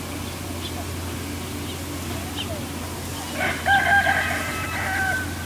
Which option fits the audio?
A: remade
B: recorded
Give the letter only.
B